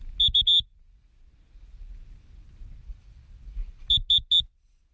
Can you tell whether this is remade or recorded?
recorded